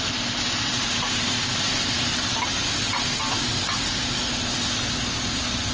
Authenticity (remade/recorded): recorded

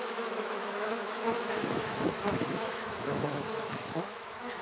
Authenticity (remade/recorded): remade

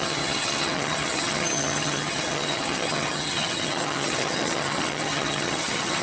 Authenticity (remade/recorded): remade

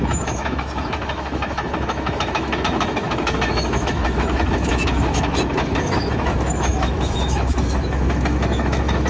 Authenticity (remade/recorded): remade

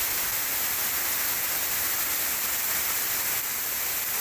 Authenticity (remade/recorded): recorded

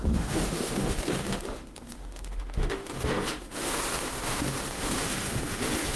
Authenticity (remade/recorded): remade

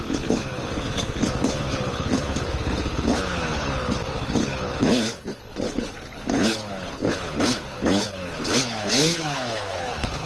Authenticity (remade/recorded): remade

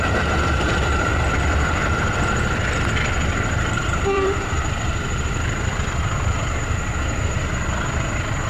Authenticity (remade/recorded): remade